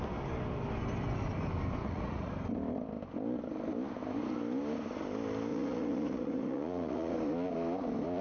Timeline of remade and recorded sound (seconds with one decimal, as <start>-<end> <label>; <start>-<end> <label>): 0.0-1.8 recorded; 1.8-2.3 remade; 2.3-5.5 recorded; 5.5-7.1 remade; 7.1-8.2 recorded